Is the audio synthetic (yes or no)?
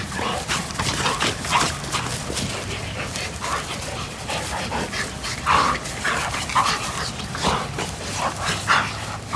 no